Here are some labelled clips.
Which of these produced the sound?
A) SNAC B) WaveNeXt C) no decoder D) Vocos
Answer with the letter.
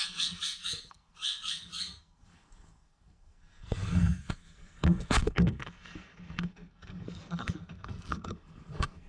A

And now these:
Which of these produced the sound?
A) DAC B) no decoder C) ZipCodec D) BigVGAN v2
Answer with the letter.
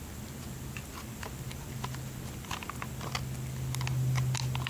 B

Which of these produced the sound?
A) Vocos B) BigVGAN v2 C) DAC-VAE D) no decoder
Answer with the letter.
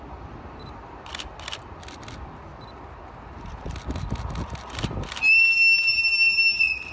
D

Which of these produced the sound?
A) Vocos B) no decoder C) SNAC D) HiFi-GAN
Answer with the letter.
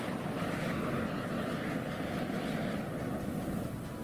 B